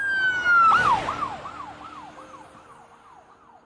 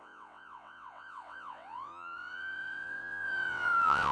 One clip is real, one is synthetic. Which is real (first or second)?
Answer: first